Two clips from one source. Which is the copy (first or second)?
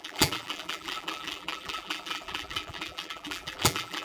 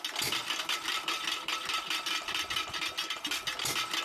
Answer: first